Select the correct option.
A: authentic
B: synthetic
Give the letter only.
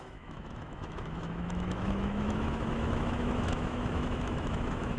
B